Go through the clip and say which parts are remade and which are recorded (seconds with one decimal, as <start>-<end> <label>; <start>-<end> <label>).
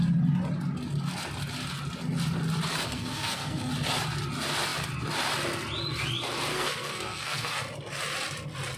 0.0-2.7 recorded; 2.7-3.7 remade; 3.7-6.5 recorded; 6.5-7.6 remade; 7.6-8.8 recorded